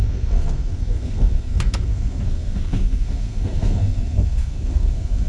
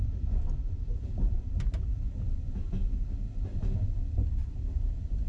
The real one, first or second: second